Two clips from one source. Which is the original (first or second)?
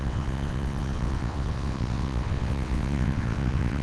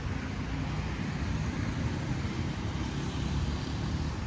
second